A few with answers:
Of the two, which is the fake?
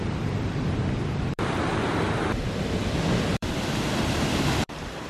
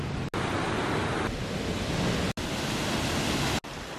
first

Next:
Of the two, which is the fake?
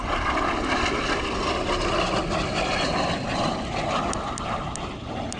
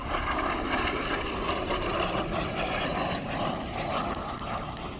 second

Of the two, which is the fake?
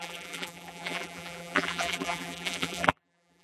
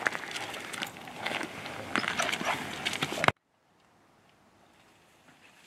first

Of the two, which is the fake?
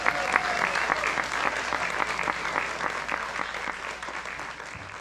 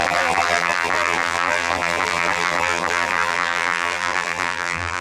second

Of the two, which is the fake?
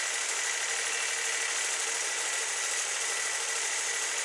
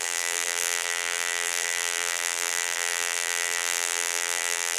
second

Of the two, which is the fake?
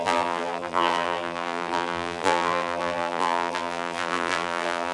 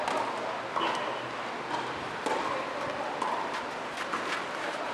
first